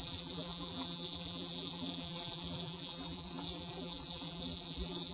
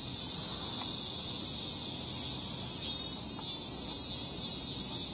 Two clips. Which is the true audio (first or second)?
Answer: second